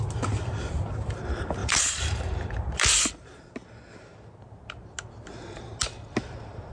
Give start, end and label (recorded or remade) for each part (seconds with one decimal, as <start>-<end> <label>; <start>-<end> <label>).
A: 0.0-1.6 recorded; 1.6-3.4 remade; 3.4-6.7 recorded